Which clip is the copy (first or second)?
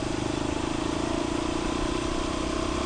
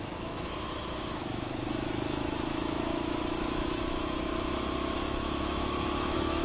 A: second